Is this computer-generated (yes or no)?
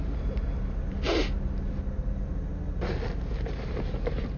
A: no